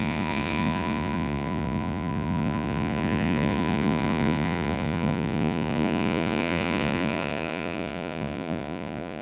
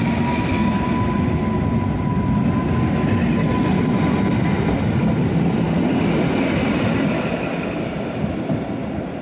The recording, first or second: second